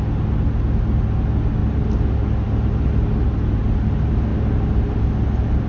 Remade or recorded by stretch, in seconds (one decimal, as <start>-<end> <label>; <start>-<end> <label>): 0.0-5.7 recorded